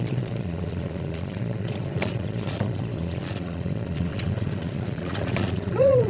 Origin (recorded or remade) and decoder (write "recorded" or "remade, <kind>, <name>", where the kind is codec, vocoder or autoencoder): remade, vocoder, Vocos